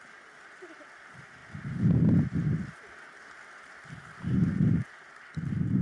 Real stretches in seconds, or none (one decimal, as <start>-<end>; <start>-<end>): 0.0-5.8

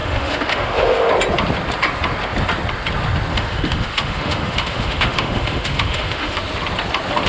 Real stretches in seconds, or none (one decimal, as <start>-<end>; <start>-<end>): 1.1-3.3; 6.4-7.3